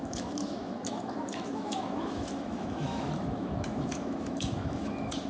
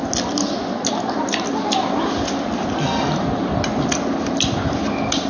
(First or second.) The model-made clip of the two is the first